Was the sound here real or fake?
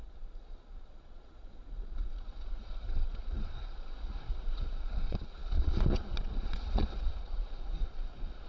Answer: fake